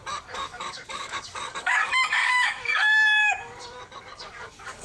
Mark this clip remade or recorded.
remade